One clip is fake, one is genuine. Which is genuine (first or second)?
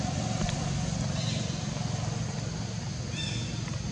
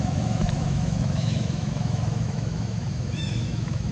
first